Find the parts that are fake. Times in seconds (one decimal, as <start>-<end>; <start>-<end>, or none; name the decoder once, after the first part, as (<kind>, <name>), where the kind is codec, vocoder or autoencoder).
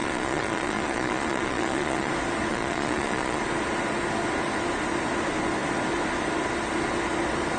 0.0-2.1 (vocoder, Vocos); 2.5-3.4